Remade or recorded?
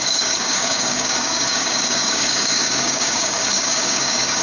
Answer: remade